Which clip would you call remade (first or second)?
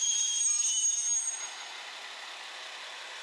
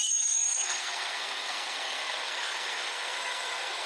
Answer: second